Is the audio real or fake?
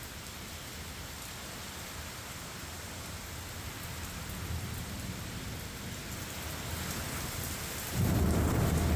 real